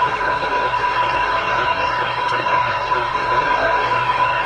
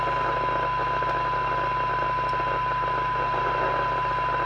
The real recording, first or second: second